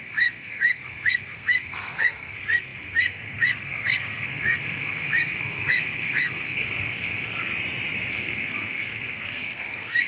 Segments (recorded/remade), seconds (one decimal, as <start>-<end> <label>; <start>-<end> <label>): 0.0-7.5 remade; 7.5-8.1 recorded; 8.1-10.1 remade